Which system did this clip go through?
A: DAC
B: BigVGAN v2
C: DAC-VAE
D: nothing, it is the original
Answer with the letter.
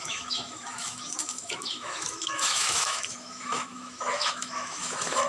C